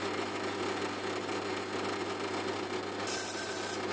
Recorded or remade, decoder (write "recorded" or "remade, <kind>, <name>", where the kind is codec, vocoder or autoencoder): recorded